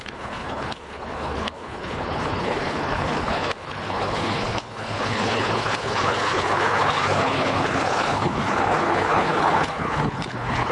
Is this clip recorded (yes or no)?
no